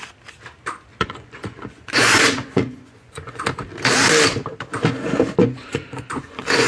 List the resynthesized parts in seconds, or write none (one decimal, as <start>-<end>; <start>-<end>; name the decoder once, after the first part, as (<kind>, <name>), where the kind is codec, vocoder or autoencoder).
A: 0.9-3.4 (vocoder, Vocos); 5.4-6.7